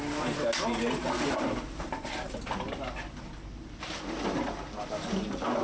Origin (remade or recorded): recorded